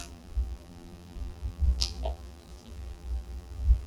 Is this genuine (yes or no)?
no